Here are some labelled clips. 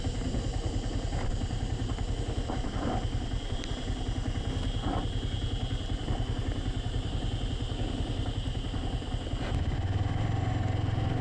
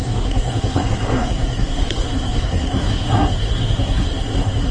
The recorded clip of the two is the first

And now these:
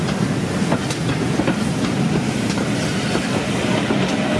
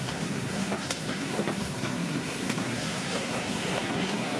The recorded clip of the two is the first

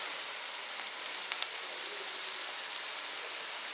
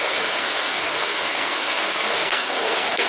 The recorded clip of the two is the first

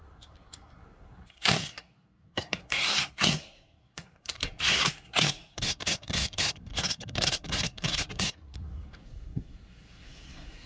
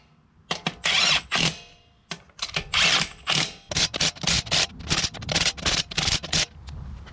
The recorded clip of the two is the second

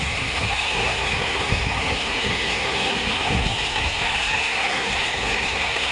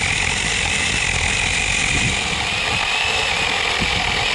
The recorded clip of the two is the second